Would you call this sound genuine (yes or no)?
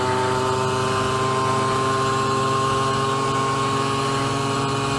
yes